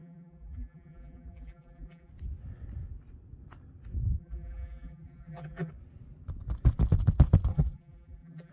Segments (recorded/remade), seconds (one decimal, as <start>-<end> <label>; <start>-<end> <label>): 0.0-2.1 remade; 2.1-4.2 recorded; 4.2-5.7 remade; 5.7-7.5 recorded; 7.5-8.5 remade